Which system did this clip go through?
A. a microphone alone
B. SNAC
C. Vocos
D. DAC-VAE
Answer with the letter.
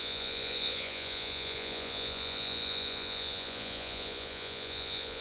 C